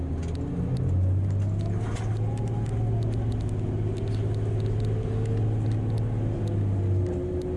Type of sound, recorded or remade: recorded